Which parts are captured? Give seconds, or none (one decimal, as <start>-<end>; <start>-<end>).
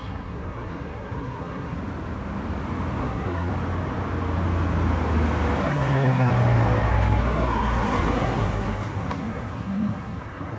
1.8-3.0; 3.5-5.6; 6.3-6.9